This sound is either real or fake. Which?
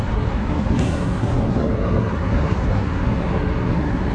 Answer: fake